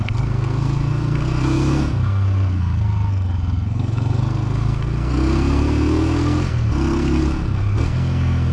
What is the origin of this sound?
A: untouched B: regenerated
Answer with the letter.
B